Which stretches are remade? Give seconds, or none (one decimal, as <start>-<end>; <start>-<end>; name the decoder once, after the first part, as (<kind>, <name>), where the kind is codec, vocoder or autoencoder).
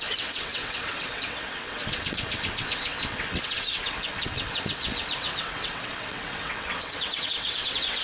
0.0-8.0 (vocoder, WaveNeXt)